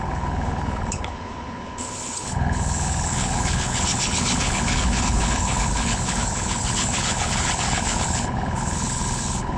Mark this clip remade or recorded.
remade